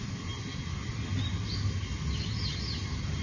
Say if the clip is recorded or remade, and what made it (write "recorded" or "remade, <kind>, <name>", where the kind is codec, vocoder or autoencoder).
recorded